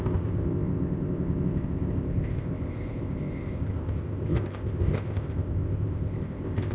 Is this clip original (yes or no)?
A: no